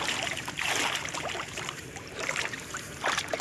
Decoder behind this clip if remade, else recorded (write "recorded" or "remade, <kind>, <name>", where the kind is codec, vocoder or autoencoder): remade, vocoder, BigVGAN v2